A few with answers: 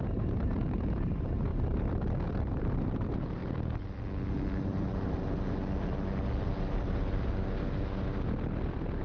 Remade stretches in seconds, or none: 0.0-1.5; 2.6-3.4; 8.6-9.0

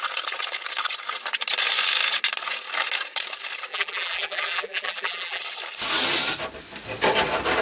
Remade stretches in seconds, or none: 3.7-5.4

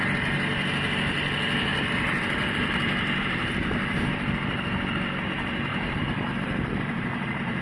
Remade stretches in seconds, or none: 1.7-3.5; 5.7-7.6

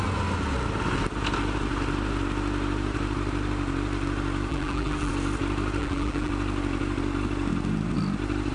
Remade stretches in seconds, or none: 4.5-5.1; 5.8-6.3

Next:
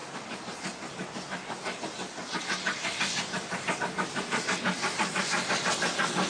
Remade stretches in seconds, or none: none

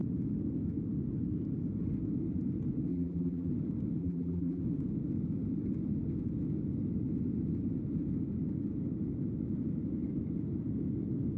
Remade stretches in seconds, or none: 2.9-3.5; 4.0-4.6